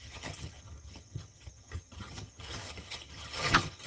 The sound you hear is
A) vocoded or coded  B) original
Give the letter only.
A